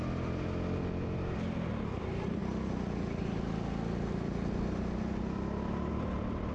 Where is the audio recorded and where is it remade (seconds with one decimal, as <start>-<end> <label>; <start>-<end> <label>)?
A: 0.0-6.5 recorded